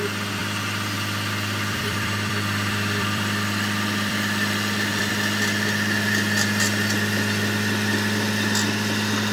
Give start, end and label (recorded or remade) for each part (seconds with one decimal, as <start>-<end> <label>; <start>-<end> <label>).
0.0-0.4 recorded; 0.4-5.1 remade; 5.1-9.3 recorded